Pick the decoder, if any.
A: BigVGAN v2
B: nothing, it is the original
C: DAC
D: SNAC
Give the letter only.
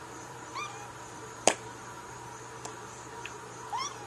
A